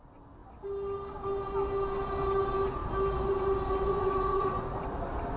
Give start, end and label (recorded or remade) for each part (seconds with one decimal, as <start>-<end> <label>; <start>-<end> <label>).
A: 0.0-3.9 recorded; 3.9-4.6 remade; 4.6-5.4 recorded